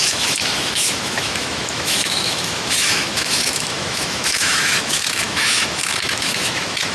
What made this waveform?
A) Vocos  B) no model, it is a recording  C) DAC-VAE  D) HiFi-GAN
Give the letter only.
C